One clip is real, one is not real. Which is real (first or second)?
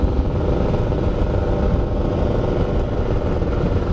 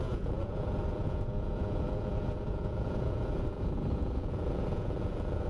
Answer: first